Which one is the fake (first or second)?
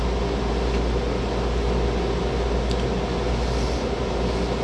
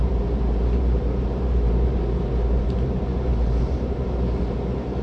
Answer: second